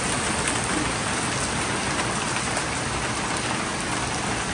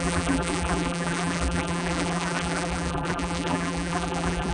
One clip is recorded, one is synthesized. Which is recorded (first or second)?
first